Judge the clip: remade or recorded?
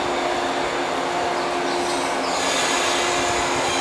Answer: recorded